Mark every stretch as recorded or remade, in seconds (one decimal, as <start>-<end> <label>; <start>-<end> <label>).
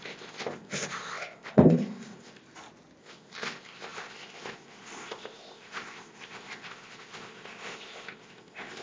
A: 0.0-2.4 remade; 2.4-3.0 recorded; 3.0-8.8 remade